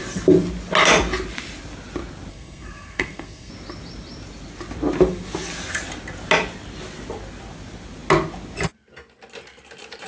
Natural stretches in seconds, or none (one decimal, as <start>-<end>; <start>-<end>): 0.0-2.3; 3.5-10.1